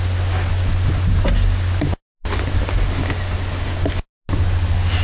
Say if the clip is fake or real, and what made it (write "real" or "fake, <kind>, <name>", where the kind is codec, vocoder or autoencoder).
real